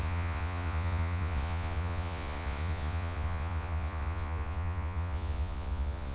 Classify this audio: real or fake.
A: fake